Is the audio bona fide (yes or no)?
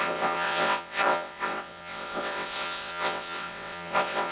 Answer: no